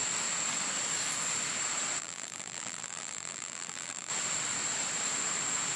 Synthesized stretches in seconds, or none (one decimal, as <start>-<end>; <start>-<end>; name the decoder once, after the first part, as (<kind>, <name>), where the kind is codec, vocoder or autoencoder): 2.0-4.1 (vocoder, BigVGAN v2)